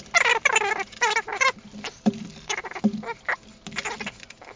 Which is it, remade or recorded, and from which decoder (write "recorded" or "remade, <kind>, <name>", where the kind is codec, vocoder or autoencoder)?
recorded